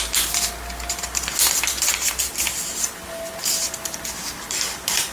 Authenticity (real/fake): real